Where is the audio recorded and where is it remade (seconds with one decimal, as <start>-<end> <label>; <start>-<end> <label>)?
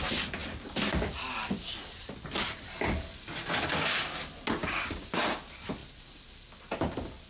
0.0-4.6 recorded; 4.6-5.2 remade; 5.2-7.3 recorded